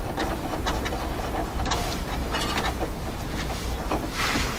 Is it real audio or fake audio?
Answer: real